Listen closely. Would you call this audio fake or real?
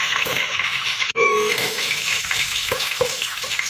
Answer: fake